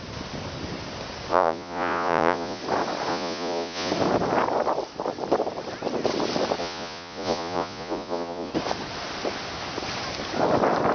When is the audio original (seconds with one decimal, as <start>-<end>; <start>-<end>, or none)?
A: 0.0-1.3; 2.6-3.1; 3.9-6.6; 8.5-10.9